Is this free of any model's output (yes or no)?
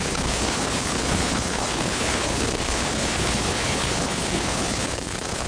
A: no